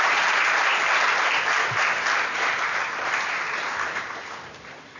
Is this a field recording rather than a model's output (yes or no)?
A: yes